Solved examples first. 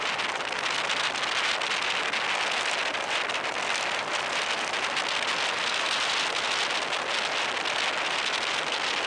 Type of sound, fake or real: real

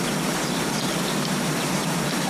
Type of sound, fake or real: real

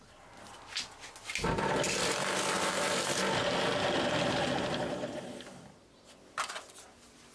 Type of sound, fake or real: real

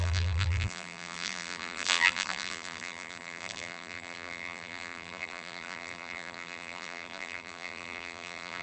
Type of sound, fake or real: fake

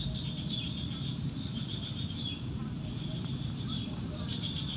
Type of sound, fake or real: fake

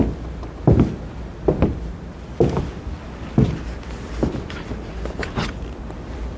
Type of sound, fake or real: real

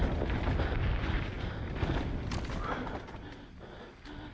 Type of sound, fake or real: real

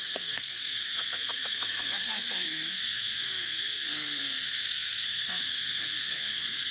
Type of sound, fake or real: fake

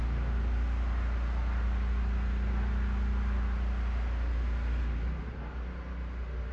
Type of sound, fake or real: real